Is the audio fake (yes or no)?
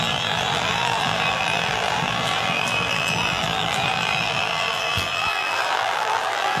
yes